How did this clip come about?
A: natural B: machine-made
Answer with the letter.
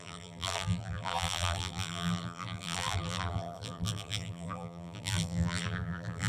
B